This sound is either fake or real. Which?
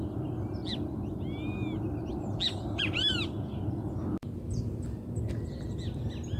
real